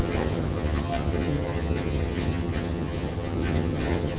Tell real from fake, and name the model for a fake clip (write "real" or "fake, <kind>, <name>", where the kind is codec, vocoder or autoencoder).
fake, vocoder, HiFi-GAN